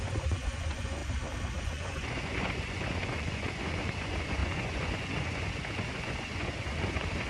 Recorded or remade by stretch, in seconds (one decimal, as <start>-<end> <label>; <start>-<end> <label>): 0.0-1.0 remade; 1.0-1.6 recorded; 1.6-7.3 remade